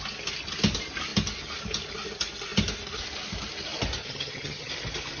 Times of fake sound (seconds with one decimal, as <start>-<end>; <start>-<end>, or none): 4.0-4.7